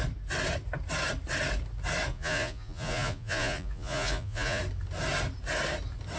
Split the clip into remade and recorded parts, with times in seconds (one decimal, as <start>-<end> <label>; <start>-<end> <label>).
0.0-2.1 recorded; 2.1-4.6 remade; 4.6-6.2 recorded